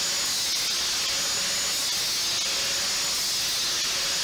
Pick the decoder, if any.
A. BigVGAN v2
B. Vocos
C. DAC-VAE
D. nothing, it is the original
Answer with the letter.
D